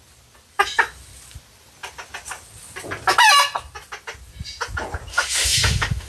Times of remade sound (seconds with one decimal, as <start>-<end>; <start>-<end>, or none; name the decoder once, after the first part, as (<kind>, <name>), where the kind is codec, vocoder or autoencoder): 5.1-6.1 (autoencoder, DAC-VAE)